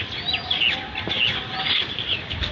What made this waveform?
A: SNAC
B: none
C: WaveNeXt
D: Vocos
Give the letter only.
B